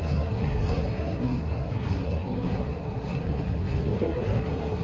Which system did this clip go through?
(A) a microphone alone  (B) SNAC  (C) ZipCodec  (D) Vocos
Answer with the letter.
B